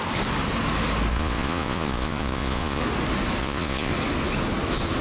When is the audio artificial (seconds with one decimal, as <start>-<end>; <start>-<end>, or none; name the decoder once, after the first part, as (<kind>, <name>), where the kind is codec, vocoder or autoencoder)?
1.1-2.8 (vocoder, Vocos); 3.4-3.9